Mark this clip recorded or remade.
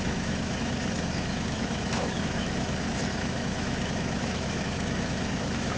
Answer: remade